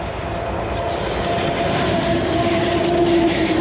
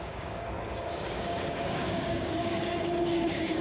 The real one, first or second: first